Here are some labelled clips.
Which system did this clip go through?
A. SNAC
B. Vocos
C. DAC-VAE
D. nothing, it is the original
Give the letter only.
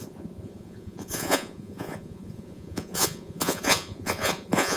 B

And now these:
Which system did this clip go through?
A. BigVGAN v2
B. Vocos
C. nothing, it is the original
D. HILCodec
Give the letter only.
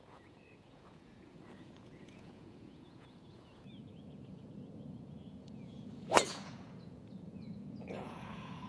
B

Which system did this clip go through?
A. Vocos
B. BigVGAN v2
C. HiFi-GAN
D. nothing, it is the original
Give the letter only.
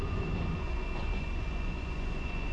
A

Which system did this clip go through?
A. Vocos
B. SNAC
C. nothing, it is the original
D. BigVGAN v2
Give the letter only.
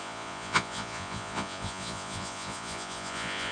A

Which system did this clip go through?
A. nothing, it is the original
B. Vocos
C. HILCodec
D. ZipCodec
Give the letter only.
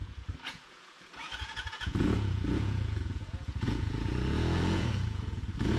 B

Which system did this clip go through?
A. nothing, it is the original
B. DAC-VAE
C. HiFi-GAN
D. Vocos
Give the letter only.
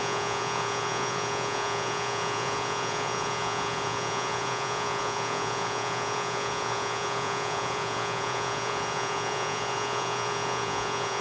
D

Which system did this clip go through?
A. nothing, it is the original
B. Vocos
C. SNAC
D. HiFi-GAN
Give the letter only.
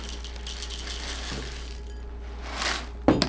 A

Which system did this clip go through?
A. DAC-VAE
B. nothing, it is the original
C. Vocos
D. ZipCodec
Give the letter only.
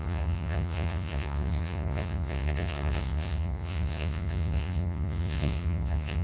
C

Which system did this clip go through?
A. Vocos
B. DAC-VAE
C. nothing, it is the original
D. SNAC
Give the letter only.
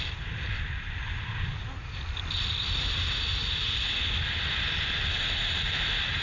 C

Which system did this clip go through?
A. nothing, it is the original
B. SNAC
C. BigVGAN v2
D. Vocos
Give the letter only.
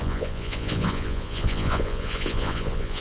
D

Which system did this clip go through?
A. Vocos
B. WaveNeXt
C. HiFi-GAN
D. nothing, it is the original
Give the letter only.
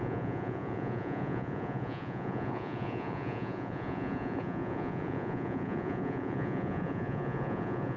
A